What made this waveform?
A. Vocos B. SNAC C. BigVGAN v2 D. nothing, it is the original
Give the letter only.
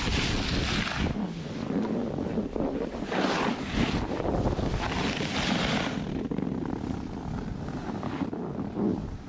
D